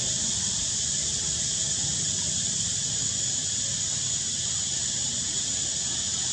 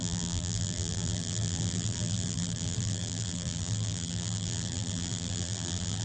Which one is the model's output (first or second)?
second